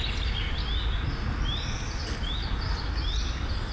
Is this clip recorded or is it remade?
recorded